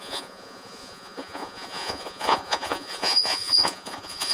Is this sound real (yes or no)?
no